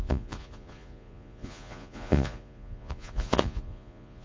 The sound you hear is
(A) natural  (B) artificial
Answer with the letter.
B